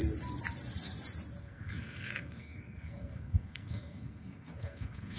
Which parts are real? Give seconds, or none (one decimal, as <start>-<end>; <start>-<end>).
0.0-1.4

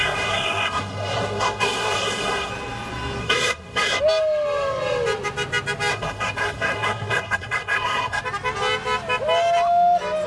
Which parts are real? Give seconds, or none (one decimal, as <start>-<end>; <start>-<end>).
2.5-3.2; 4.0-5.9; 8.2-10.3

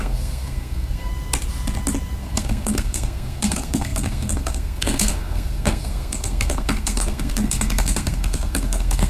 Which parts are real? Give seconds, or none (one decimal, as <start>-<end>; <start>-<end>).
1.1-2.2

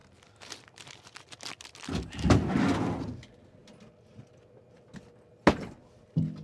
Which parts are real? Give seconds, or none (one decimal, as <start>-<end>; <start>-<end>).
0.0-6.4